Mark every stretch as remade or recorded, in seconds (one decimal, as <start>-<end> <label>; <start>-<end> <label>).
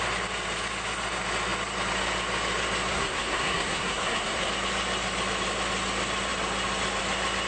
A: 0.0-2.9 recorded; 2.9-4.5 remade; 4.5-7.5 recorded